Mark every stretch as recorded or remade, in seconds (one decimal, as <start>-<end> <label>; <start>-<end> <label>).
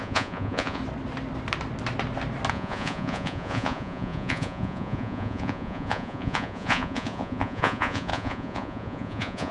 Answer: 0.0-0.8 remade; 0.8-2.5 recorded; 2.5-9.5 remade